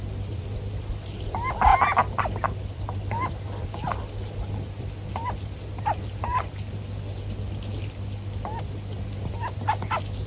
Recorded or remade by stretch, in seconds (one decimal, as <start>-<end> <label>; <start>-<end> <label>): 0.0-10.3 recorded